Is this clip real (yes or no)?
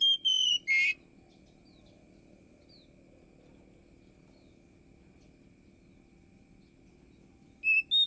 yes